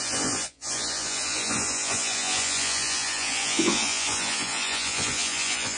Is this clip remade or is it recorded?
remade